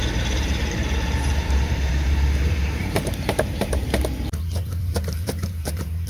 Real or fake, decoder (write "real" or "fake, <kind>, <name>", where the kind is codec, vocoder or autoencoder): fake, vocoder, BigVGAN v2